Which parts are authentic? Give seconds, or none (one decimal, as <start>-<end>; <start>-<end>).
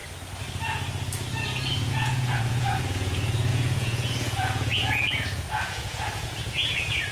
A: 0.0-1.9